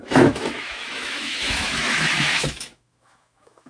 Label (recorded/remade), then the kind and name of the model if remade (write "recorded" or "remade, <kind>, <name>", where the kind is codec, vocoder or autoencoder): remade, autoencoder, DAC-VAE